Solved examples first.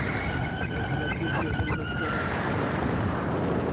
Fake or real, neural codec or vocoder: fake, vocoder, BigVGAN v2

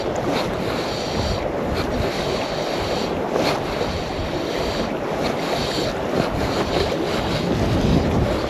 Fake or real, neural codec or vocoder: real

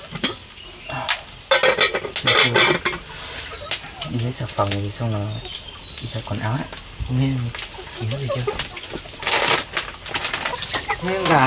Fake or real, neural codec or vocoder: real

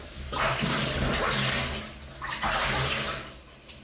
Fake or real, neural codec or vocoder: real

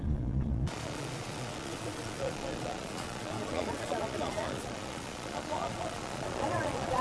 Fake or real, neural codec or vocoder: fake, vocoder, Vocos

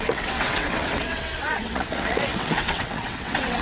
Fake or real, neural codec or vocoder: fake, vocoder, WaveNeXt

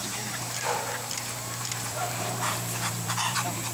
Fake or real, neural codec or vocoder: fake, vocoder, BigVGAN v2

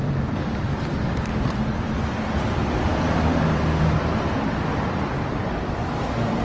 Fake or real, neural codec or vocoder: fake, vocoder, BigVGAN v2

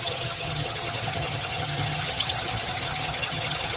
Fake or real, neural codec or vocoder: fake, vocoder, HiFi-GAN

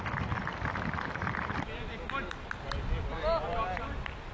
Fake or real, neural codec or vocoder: real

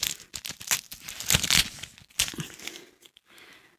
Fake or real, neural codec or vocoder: real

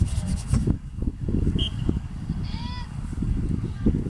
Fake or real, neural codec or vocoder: fake, codec, DAC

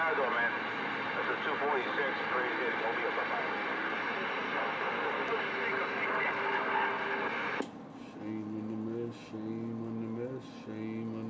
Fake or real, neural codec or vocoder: real